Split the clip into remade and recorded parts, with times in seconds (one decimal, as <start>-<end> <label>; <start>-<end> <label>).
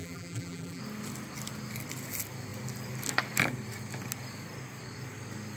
0.0-0.8 remade; 0.8-5.6 recorded